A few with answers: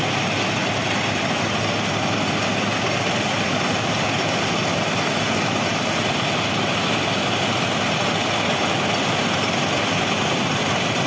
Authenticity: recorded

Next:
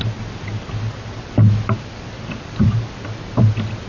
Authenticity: recorded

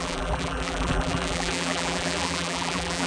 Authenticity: remade